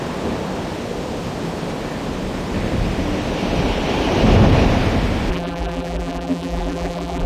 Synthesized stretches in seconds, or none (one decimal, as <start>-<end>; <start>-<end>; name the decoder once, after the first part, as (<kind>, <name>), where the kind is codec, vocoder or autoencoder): 5.3-7.3 (vocoder, BigVGAN v2)